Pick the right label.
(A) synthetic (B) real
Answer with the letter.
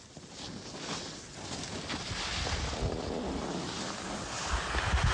B